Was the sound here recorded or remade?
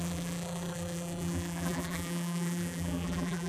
remade